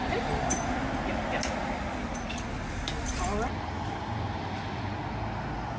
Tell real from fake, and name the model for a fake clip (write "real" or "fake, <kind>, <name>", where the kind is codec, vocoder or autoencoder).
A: real